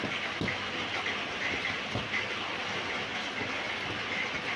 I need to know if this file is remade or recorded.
recorded